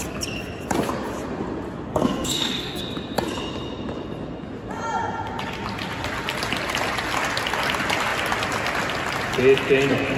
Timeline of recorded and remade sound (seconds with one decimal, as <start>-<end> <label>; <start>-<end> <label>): 0.0-1.9 recorded; 1.9-2.8 remade; 2.8-10.2 recorded